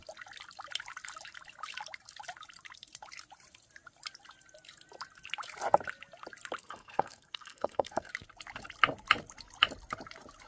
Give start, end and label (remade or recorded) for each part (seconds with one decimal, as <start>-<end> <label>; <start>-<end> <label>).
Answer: 0.0-6.6 recorded; 6.6-8.1 remade; 8.1-10.5 recorded

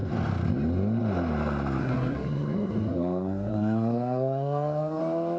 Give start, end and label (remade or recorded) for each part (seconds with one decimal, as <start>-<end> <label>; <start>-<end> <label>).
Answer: 0.0-1.8 recorded; 1.8-5.0 remade; 5.0-5.4 recorded

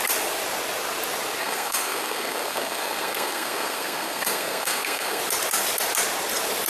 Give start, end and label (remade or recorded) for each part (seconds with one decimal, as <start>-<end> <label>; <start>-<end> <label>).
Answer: 0.0-1.4 recorded; 1.4-5.2 remade; 5.2-6.7 recorded

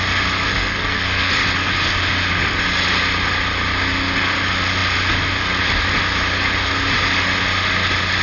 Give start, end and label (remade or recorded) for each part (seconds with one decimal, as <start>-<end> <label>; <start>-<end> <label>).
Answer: 0.0-0.5 recorded; 0.5-1.3 remade; 1.3-8.2 recorded

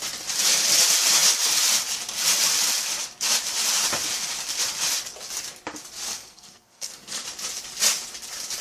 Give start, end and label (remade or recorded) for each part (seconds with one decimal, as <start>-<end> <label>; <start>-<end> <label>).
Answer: 0.0-6.1 recorded; 6.1-7.2 remade; 7.2-8.6 recorded

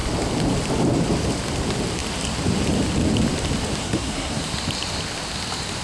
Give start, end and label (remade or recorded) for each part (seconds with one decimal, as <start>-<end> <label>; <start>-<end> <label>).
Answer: 0.0-3.8 recorded; 3.8-4.4 remade; 4.4-5.8 recorded

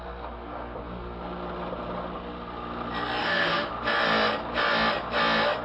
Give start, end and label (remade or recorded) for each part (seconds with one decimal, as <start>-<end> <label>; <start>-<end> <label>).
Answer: 0.0-3.2 recorded; 3.2-3.7 remade; 3.7-5.6 recorded